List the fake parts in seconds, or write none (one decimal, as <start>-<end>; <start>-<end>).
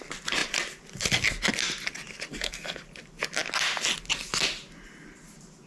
2.3-2.8